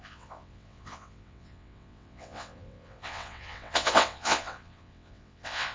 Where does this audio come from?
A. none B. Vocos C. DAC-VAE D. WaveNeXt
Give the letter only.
D